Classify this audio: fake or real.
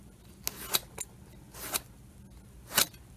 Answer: real